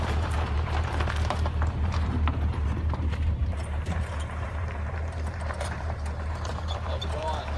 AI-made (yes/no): yes